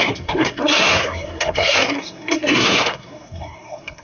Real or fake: fake